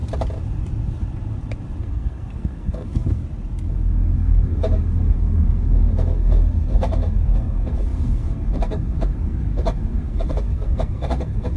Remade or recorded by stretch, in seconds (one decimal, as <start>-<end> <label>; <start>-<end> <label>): 0.0-1.8 recorded; 1.8-3.2 remade; 3.2-3.7 recorded; 3.7-11.6 remade